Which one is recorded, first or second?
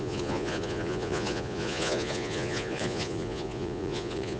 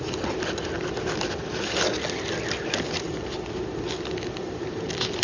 second